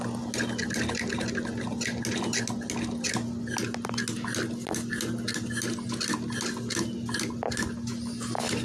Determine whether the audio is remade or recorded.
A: recorded